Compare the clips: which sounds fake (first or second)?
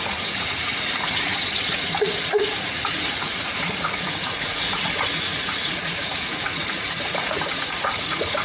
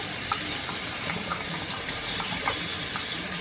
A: first